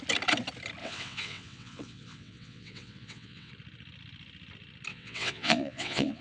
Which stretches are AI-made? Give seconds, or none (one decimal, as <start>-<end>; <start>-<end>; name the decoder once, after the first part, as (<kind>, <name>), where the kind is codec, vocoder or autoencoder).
0.8-3.5 (vocoder, WaveNeXt); 4.9-6.2